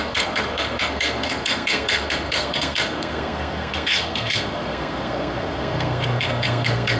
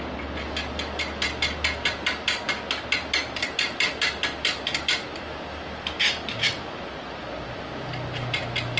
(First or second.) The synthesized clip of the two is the first